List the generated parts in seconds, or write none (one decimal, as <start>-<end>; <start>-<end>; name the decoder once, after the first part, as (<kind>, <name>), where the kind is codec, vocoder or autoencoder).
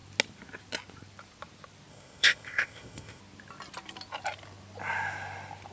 1.9-3.2 (codec, ZipCodec)